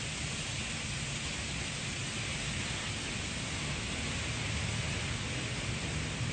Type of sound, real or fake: real